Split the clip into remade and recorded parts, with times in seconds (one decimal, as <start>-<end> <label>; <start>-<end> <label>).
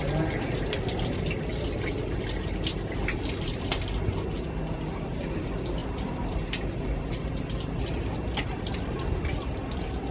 0.0-10.1 recorded